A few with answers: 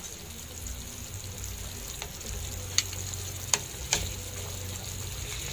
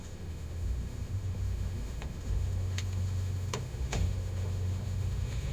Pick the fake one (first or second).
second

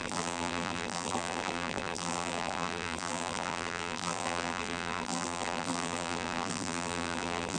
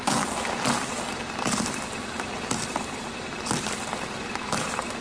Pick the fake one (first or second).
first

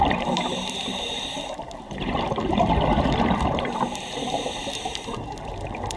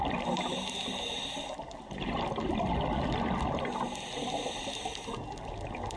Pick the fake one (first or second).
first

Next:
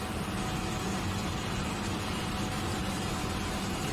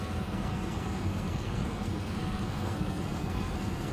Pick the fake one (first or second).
second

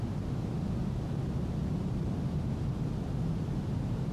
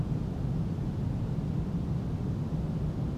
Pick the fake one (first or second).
second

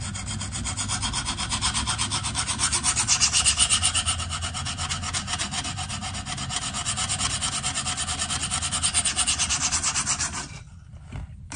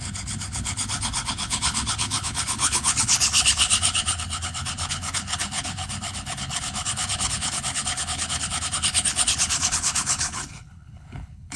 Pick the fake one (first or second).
second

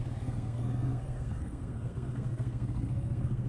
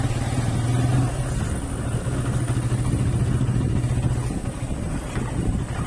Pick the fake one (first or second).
first